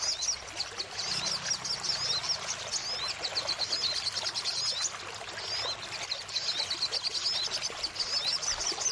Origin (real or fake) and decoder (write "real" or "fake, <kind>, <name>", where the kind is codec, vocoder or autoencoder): real